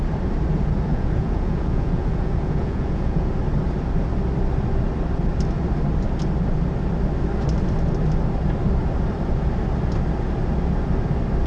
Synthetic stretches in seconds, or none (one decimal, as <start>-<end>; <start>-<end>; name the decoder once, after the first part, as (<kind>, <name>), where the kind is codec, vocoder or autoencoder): 0.9-3.3 (vocoder, Vocos)